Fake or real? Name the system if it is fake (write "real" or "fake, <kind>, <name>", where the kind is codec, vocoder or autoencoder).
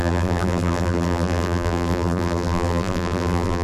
fake, vocoder, BigVGAN v2